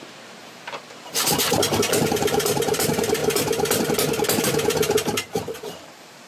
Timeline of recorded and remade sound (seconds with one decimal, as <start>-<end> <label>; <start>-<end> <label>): 0.0-1.4 remade; 1.4-2.0 recorded; 2.0-3.2 remade; 3.2-4.4 recorded; 4.4-6.3 remade